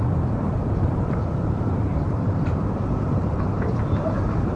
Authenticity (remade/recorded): remade